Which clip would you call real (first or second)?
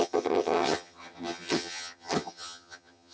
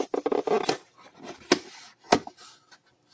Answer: second